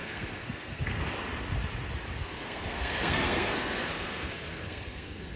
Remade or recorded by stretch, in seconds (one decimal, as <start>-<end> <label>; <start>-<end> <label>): 0.0-1.0 remade; 1.0-2.2 recorded; 2.2-5.4 remade